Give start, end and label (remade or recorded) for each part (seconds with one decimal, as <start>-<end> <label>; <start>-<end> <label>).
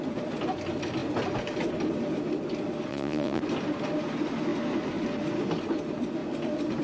0.0-2.9 recorded; 2.9-3.4 remade; 3.4-6.8 recorded